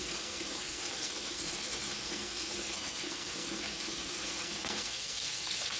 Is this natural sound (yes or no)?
no